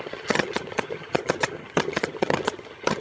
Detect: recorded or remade remade